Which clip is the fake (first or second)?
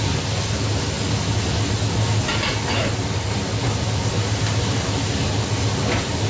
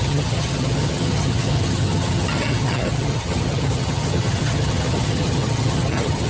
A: second